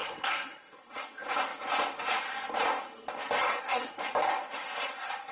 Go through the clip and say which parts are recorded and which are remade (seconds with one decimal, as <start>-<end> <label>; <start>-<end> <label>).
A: 0.0-0.7 remade; 0.7-3.5 recorded; 3.5-4.0 remade; 4.0-5.3 recorded